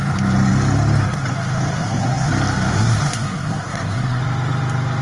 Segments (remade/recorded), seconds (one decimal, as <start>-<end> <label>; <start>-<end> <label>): 0.0-1.7 recorded; 1.7-2.3 remade; 2.3-2.7 recorded; 2.7-4.2 remade; 4.2-5.0 recorded